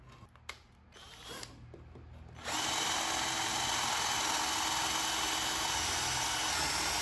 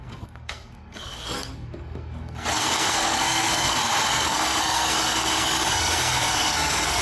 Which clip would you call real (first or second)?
first